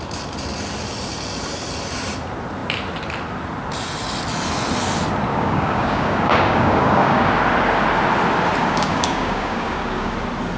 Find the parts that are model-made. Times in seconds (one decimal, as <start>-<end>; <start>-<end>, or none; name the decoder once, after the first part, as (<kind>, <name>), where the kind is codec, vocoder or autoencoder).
5.3-7.3 (codec, DAC); 8.6-10.1